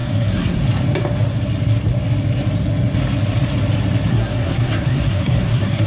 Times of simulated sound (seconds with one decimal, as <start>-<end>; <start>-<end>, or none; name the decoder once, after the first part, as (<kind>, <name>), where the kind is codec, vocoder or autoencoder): 0.0-0.6 (codec, SNAC); 4.1-5.9